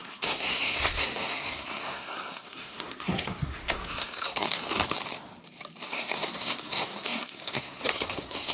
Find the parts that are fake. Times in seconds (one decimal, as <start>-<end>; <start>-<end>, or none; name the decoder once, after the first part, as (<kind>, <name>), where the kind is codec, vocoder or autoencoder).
0.0-4.5 (codec, SNAC); 5.9-8.5